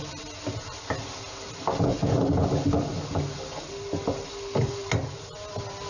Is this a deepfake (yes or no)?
no